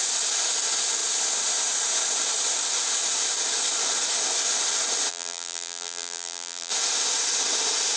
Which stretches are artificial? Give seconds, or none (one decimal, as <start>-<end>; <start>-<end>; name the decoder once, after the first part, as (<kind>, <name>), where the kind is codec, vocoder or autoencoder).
5.1-6.7 (vocoder, BigVGAN v2)